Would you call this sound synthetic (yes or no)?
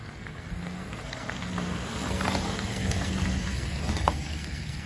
yes